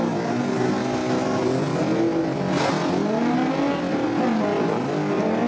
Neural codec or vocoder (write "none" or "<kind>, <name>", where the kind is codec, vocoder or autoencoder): none